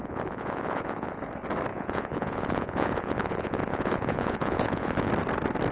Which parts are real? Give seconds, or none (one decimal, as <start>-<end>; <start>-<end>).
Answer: 1.2-1.7; 5.1-5.7